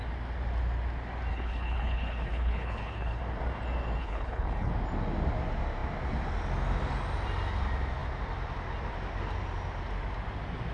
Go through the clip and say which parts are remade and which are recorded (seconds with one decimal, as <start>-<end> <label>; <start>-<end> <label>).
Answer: 0.0-1.3 recorded; 1.3-3.2 remade; 3.2-4.0 recorded; 4.0-4.7 remade; 4.7-10.7 recorded